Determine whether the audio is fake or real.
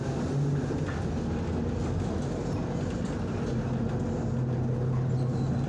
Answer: real